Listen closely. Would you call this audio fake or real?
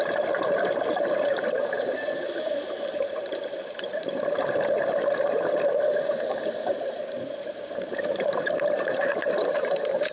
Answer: fake